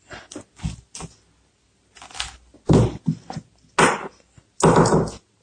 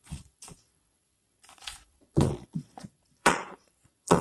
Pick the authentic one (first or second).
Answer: first